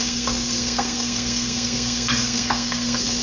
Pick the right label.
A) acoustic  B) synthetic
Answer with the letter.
B